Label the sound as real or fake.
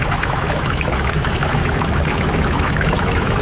fake